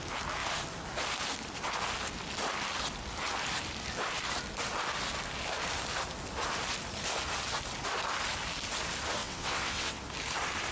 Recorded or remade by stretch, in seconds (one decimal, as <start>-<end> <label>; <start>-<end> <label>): 0.0-9.2 recorded; 9.2-10.0 remade; 10.0-10.7 recorded